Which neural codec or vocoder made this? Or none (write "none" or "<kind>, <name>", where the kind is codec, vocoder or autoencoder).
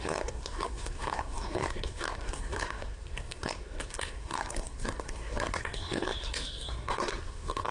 codec, SNAC